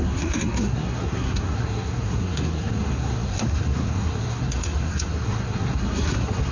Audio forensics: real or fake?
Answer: fake